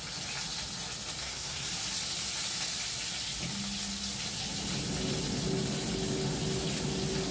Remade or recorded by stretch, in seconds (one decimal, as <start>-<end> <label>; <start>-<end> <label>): 0.0-1.2 recorded; 1.2-1.7 remade; 1.7-7.3 recorded